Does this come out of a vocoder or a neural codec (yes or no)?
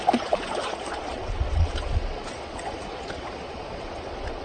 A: yes